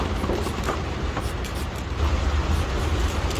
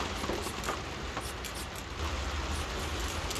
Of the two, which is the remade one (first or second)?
first